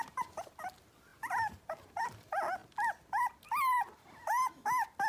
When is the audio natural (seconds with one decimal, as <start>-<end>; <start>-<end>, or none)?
0.0-5.1